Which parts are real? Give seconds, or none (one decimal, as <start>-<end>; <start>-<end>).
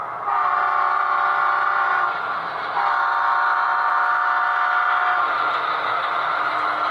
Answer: 0.0-3.3; 3.9-6.9